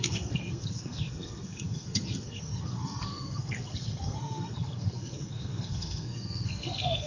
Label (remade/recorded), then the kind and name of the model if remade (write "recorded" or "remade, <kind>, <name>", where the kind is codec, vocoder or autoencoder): remade, codec, SNAC